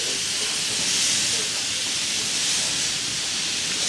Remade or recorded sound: recorded